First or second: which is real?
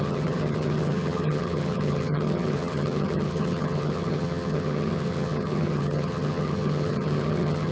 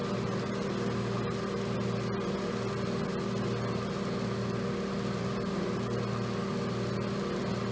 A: second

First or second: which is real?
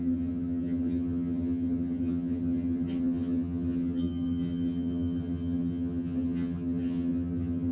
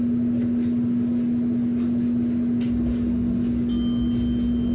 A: second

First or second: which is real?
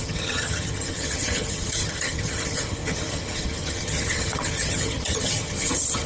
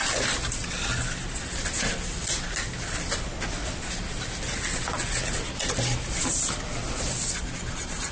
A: second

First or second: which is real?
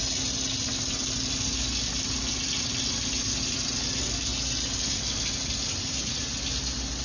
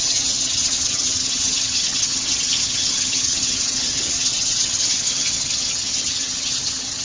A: first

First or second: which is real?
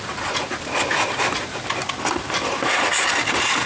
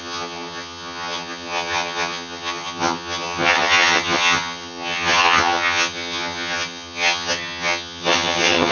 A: first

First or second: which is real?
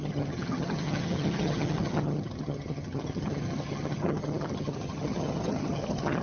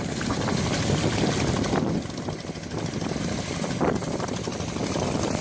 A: second